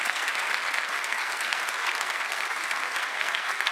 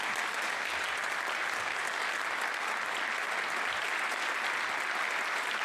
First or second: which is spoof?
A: first